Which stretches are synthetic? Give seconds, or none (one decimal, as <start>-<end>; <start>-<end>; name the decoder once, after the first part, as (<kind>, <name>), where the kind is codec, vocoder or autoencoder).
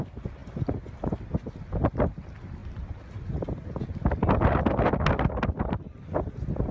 none